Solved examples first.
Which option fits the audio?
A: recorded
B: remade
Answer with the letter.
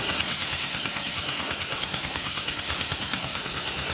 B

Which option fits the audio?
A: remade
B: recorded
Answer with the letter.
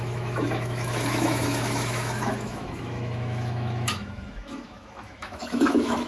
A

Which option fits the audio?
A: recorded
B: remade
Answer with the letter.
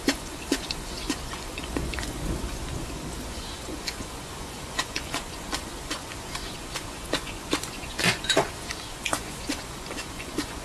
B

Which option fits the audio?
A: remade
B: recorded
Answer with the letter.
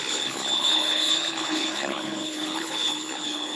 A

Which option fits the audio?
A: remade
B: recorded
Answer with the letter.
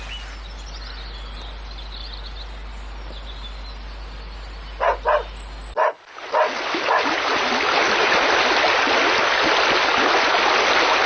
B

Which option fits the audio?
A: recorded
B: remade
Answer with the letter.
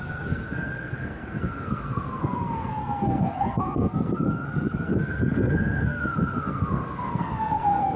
B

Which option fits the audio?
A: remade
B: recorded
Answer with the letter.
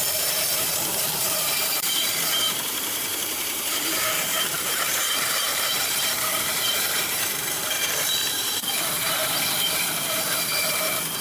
A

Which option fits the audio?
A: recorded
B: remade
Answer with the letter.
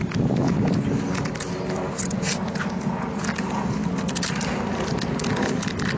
A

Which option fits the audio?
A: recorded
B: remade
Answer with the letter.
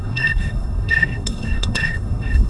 B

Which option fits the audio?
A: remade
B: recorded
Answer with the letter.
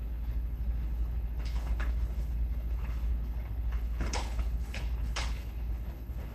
A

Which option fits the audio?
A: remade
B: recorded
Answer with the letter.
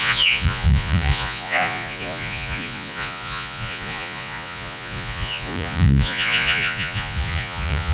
A